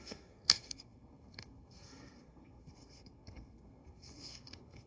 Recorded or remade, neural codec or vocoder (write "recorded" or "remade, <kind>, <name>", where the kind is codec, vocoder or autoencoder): remade, codec, SNAC